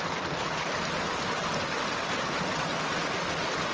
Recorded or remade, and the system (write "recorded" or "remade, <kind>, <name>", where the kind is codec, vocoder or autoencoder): recorded